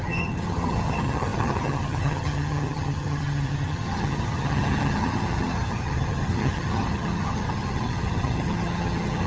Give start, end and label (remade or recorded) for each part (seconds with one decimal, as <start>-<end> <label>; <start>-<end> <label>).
0.0-9.3 remade